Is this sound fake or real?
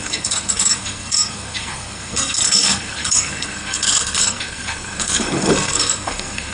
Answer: fake